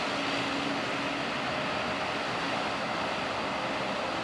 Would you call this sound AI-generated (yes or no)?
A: no